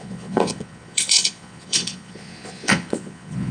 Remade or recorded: remade